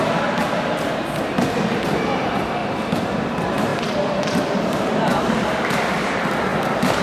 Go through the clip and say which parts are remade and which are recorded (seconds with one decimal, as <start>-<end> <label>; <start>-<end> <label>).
0.0-7.0 remade